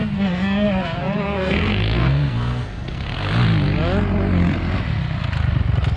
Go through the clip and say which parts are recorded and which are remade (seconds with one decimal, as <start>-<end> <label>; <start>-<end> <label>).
0.0-3.3 remade; 3.3-6.0 recorded